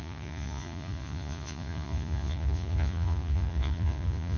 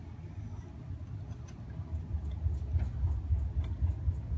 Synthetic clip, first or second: first